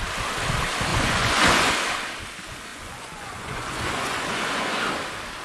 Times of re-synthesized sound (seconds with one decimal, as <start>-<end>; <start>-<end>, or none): 0.9-1.7; 2.7-4.8